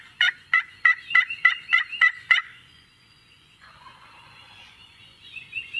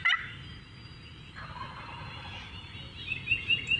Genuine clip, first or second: second